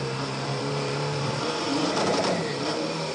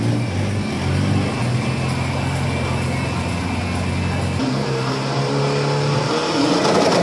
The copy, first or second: first